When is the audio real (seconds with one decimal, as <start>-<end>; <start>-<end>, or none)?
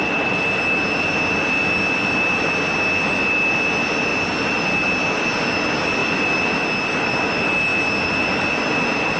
0.0-9.2